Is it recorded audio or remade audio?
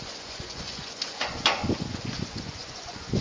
remade